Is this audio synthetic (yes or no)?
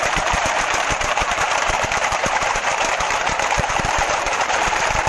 yes